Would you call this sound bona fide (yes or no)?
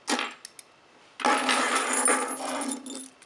yes